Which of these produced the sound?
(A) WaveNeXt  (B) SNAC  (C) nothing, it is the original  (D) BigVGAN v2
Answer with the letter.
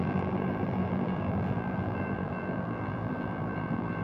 D